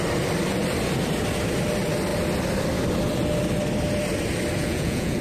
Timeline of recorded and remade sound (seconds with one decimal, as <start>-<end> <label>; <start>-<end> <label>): 0.0-4.6 recorded; 4.6-5.2 remade

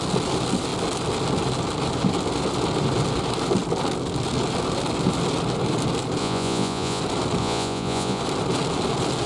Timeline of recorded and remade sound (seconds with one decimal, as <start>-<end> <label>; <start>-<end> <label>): 0.0-6.2 recorded; 6.2-7.0 remade; 7.0-7.4 recorded; 7.4-8.2 remade; 8.2-9.3 recorded